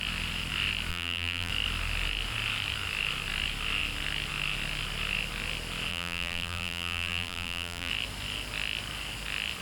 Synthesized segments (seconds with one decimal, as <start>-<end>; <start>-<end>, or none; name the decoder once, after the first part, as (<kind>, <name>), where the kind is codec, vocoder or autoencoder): 0.9-1.5 (vocoder, BigVGAN v2); 5.9-7.9